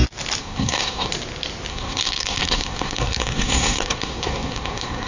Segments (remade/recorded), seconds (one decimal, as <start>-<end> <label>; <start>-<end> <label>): 0.0-0.4 recorded; 0.4-1.1 remade; 1.1-1.7 recorded; 1.7-5.1 remade